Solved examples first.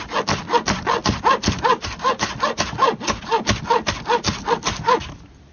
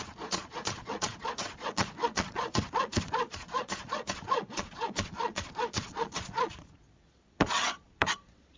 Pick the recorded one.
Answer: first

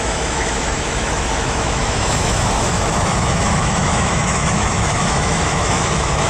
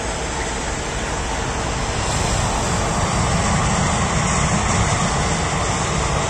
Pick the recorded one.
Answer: second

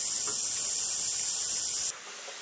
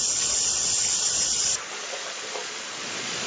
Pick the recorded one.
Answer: first